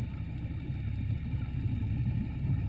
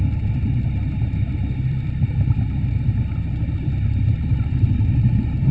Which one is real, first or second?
first